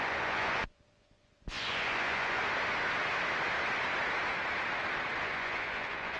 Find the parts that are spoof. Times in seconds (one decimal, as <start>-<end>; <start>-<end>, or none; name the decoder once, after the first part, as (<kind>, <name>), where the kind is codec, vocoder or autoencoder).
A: 0.0-2.4 (vocoder, Vocos); 5.2-6.2